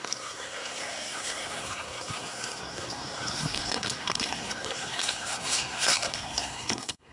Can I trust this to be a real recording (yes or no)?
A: no